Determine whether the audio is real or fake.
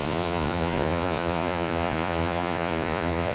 fake